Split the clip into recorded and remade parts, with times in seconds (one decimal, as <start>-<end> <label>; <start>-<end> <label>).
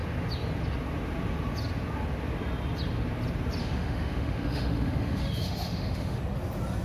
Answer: 0.0-3.6 recorded; 3.6-6.2 remade; 6.2-6.8 recorded